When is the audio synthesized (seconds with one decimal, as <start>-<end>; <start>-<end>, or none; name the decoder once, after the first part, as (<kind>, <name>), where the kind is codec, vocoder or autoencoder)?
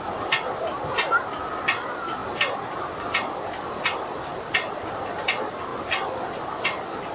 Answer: none